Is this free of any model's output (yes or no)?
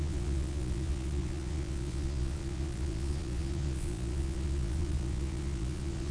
no